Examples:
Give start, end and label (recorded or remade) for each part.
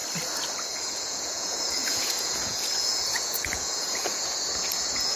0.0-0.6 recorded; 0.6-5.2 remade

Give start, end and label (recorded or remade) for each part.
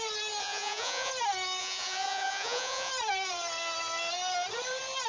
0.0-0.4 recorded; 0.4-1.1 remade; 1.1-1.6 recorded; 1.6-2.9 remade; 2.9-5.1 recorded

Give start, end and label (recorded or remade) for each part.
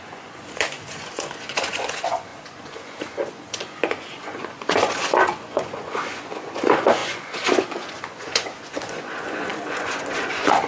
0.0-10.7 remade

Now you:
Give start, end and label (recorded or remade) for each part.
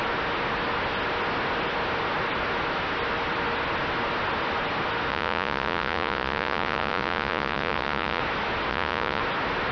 0.0-5.1 recorded; 5.1-8.2 remade; 8.2-8.7 recorded; 8.7-9.2 remade; 9.2-9.7 recorded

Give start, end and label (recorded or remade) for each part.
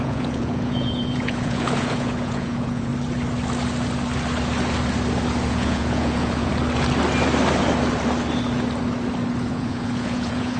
0.0-2.9 remade; 2.9-5.5 recorded; 5.5-6.5 remade; 6.5-9.5 recorded; 9.5-10.6 remade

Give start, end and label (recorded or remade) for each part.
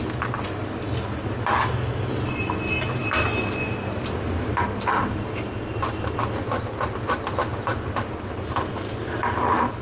0.0-9.8 recorded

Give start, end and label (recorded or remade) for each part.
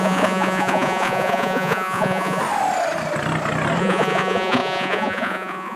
0.0-2.4 remade; 2.4-3.8 recorded; 3.8-5.8 remade